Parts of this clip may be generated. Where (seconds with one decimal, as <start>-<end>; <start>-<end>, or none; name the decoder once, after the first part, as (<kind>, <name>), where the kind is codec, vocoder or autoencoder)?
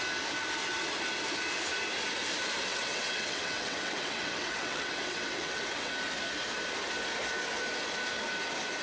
2.7-5.9 (vocoder, WaveNeXt)